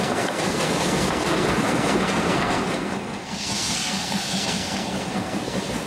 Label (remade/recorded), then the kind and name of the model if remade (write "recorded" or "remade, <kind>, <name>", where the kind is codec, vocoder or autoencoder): remade, codec, SNAC